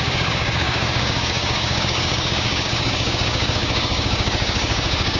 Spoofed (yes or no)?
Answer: yes